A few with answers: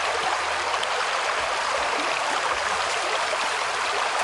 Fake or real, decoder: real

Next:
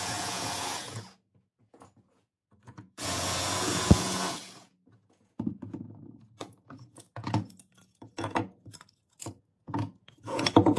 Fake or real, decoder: fake, vocoder, Vocos